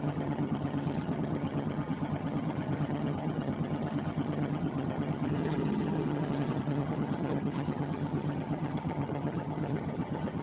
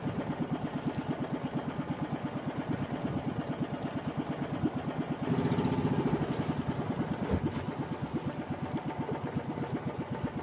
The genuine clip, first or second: second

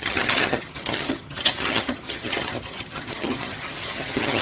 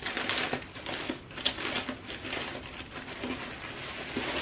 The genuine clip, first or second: second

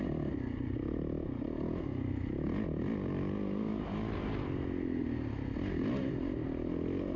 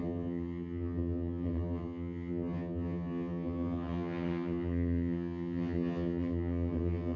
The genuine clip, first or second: first